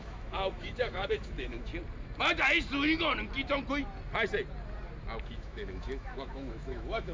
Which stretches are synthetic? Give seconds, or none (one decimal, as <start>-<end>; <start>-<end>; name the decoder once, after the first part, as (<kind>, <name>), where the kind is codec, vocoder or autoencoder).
0.0-1.7 (autoencoder, DAC-VAE); 5.2-7.1